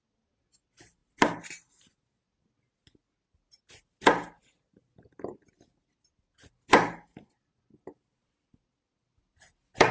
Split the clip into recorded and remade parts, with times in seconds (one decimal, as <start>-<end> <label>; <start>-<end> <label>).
0.0-9.9 recorded